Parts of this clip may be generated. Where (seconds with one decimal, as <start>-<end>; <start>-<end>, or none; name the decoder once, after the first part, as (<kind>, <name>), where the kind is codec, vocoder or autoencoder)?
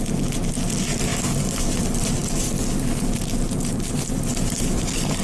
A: none